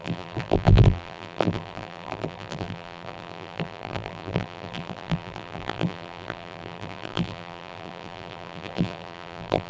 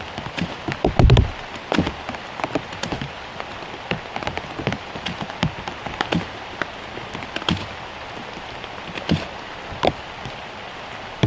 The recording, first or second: second